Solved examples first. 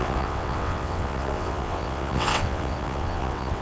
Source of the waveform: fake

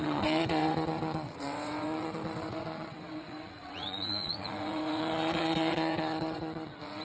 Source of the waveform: fake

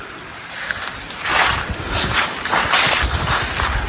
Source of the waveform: real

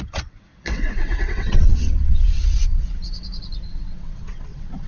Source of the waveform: fake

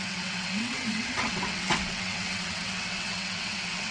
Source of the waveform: fake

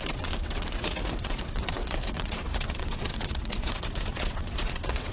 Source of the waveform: fake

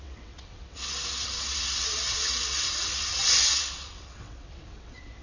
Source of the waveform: fake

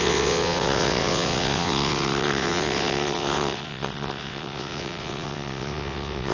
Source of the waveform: fake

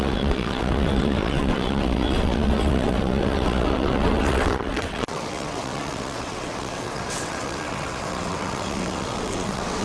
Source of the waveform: fake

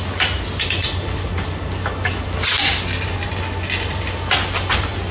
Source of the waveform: real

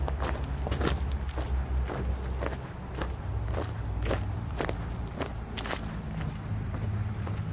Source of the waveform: real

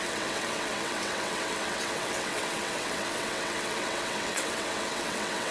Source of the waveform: fake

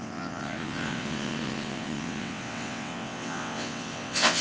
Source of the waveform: fake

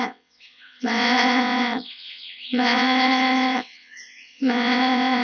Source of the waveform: fake